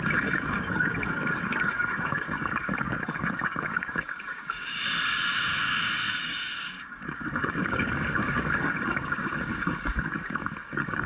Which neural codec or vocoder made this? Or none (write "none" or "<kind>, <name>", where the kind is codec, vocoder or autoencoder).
codec, DAC